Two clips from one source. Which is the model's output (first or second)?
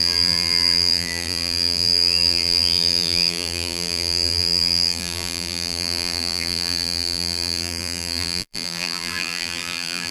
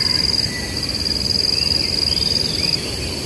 first